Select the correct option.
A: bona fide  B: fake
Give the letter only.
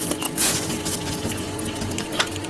B